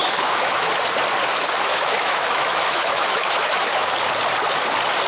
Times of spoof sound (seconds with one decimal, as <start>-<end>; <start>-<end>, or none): 0.0-0.7; 1.7-3.9